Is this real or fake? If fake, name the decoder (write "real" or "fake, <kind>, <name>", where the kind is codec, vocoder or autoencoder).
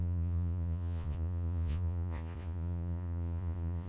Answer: fake, vocoder, Vocos